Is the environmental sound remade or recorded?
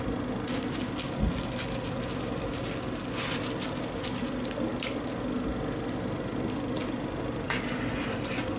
recorded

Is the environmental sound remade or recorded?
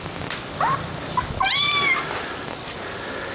recorded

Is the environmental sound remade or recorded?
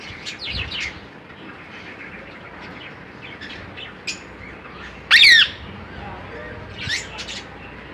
recorded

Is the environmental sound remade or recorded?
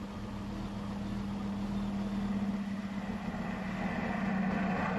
recorded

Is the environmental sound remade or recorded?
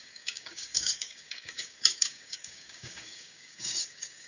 remade